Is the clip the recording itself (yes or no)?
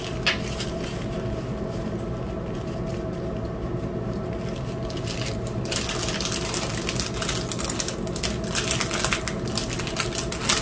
yes